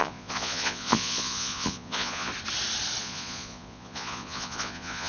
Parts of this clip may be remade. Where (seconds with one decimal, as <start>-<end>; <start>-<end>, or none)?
0.0-2.3; 3.0-5.1